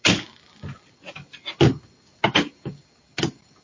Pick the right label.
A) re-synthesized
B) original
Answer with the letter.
B